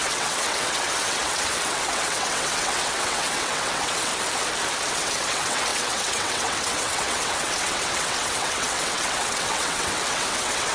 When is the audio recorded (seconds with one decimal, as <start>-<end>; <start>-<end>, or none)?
4.1-4.9